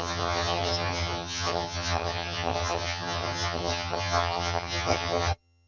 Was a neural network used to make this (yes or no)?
yes